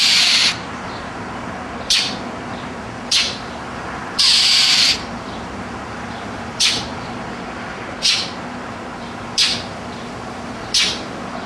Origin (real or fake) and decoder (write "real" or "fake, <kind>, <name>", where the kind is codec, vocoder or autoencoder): fake, vocoder, BigVGAN v2